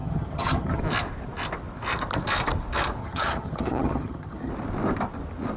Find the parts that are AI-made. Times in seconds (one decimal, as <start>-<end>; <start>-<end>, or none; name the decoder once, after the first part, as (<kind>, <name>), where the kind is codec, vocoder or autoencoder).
0.0-0.8 (vocoder, HiFi-GAN); 3.0-4.5